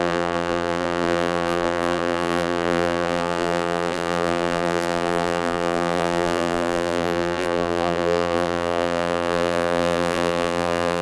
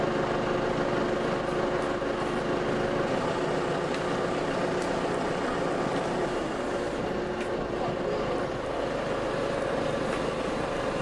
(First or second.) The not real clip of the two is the first